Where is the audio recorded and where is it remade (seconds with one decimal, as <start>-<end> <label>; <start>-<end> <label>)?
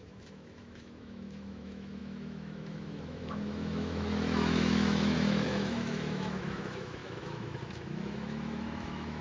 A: 0.0-9.2 remade